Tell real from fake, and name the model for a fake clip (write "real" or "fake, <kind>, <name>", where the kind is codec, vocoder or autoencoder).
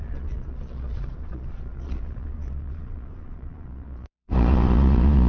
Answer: fake, vocoder, Vocos